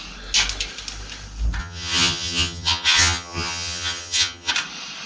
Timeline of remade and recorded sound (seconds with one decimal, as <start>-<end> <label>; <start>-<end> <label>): 0.0-1.6 recorded; 1.6-4.5 remade; 4.5-5.1 recorded